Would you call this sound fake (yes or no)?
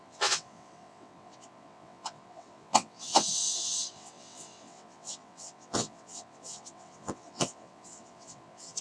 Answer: yes